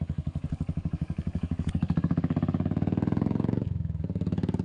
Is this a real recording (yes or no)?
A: no